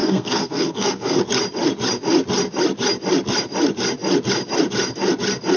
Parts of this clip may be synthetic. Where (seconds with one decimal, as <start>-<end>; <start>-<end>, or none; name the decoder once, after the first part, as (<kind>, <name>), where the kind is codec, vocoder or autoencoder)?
0.0-1.2 (codec, SNAC)